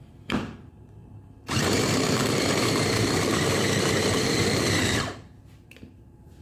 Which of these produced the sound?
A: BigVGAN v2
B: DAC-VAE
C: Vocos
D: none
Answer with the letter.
A